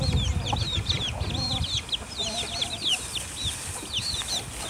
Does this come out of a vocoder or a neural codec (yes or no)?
no